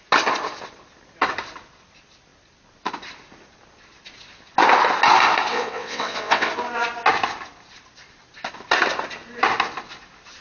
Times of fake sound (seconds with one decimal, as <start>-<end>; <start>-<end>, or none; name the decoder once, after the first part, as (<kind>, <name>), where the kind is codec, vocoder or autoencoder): 5.5-6.5 (vocoder, WaveNeXt)